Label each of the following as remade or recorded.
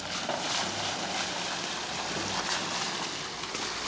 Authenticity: recorded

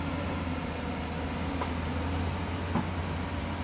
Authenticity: recorded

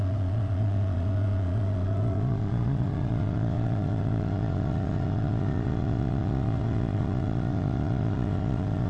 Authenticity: remade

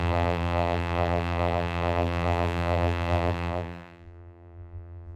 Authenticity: remade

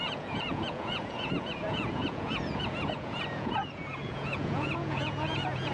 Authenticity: remade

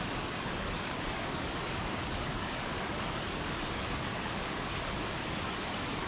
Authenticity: remade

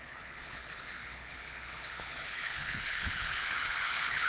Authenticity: remade